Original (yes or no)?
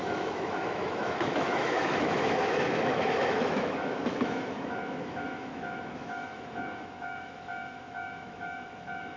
no